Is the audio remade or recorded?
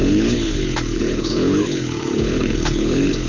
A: remade